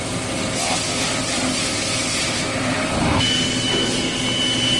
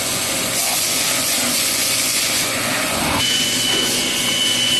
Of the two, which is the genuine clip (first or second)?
first